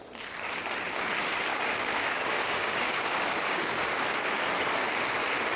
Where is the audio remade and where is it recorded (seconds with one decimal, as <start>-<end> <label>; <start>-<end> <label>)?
0.0-1.5 recorded; 1.5-4.2 remade; 4.2-5.6 recorded